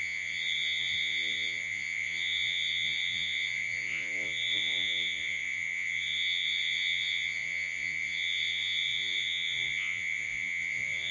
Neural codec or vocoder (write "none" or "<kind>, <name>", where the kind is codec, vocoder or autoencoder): vocoder, Vocos